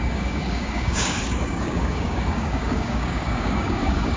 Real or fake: fake